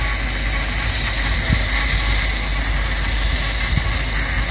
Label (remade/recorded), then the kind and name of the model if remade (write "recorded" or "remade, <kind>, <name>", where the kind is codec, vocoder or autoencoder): recorded